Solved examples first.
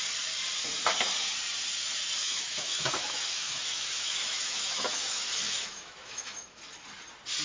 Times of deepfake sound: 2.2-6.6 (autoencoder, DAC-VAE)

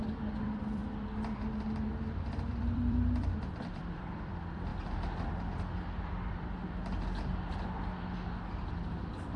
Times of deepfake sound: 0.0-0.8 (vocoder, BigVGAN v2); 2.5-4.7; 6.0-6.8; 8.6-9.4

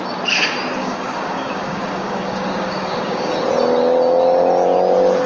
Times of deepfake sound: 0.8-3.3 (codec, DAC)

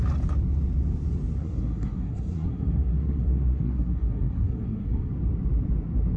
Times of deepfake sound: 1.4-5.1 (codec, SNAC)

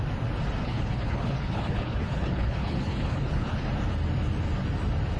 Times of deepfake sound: 0.6-3.7 (codec, HILCodec)

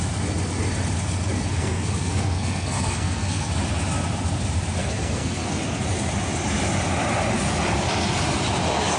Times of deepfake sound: 1.6-3.5 (codec, SNAC); 4.8-5.6

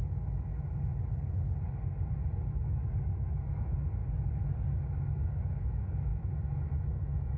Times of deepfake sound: 0.0-0.5 (autoencoder, DAC-VAE); 2.4-4.0; 5.0-7.4

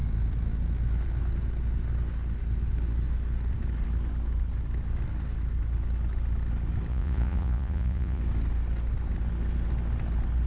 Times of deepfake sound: 6.9-8.2 (vocoder, Vocos)